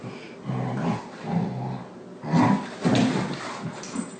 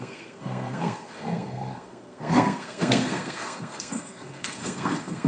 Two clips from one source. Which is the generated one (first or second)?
second